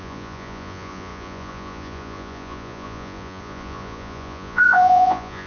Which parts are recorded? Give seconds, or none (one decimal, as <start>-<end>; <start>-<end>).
none